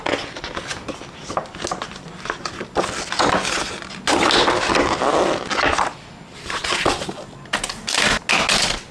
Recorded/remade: recorded